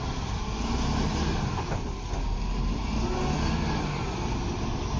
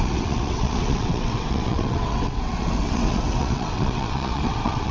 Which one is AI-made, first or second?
second